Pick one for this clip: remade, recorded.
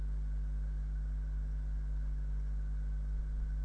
recorded